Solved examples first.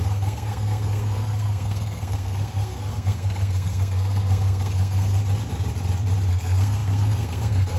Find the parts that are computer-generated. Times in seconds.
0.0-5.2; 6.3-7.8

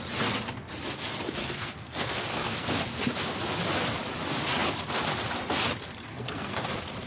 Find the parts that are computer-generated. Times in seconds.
1.4-2.7; 6.1-6.6

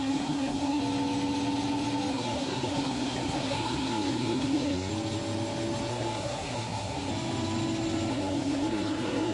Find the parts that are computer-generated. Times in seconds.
0.0-0.8; 2.1-4.9; 5.9-7.1; 8.1-9.3

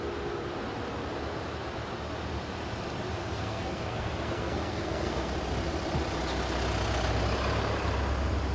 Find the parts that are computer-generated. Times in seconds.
3.2-5.3

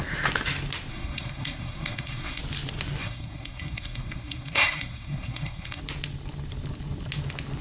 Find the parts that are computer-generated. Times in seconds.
0.9-2.4; 3.0-5.8

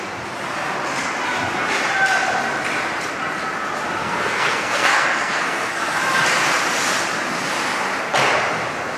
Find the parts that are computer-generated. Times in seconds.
4.0-6.0

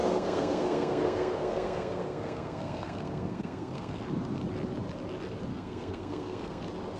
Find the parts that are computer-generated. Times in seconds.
0.0-4.0; 5.5-6.6